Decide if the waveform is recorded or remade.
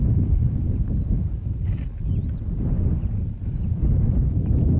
recorded